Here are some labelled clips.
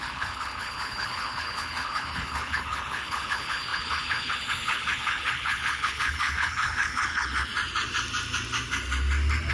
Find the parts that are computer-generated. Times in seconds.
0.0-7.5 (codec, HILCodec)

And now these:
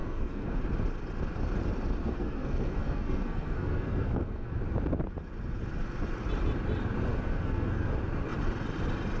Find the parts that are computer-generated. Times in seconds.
0.0-0.6 (codec, SNAC); 2.0-4.6; 7.1-7.9

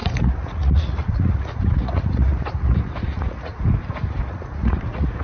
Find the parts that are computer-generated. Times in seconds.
0.0-3.5 (vocoder, Vocos); 4.3-5.2

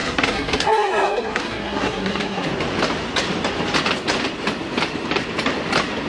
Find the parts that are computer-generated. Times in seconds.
0.0-2.5 (codec, SNAC)

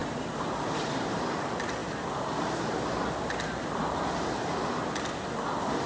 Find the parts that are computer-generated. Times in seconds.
0.0-1.2 (vocoder, BigVGAN v2)